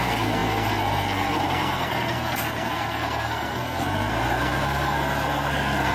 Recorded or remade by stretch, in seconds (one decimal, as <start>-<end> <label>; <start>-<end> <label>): 0.0-5.9 remade